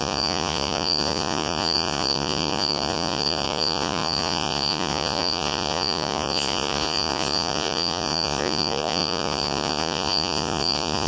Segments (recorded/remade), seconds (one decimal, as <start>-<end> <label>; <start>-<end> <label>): 0.0-11.1 remade